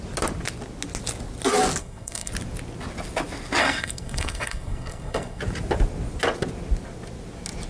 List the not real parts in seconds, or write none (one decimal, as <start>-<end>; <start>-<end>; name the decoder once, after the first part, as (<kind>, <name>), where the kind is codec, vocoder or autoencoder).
1.8-2.3 (codec, SNAC); 3.6-5.4